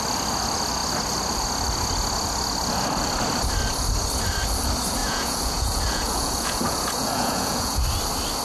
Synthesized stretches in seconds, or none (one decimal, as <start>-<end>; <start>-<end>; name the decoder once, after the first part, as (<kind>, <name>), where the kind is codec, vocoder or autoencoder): 5.0-7.8 (vocoder, Vocos)